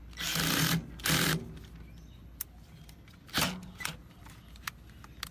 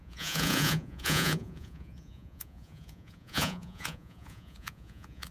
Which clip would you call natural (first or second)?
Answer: first